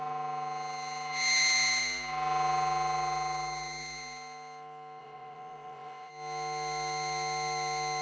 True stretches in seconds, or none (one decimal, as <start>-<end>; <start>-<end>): 0.0-5.0; 6.1-8.0